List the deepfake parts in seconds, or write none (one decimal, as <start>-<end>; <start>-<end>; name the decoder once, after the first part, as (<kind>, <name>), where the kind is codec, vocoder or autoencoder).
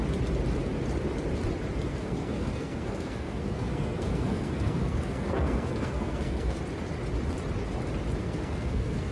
1.9-6.6 (codec, SNAC); 8.2-9.1